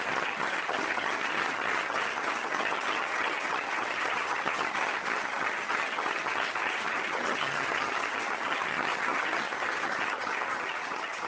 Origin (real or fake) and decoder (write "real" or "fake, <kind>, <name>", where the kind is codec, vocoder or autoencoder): fake, vocoder, HiFi-GAN